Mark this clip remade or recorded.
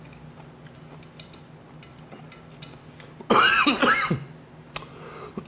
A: recorded